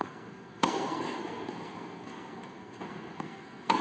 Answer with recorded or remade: remade